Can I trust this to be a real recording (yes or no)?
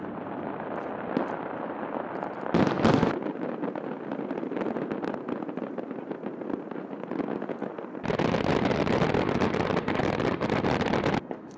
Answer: yes